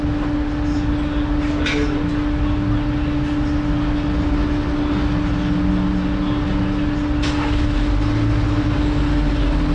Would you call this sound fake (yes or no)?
no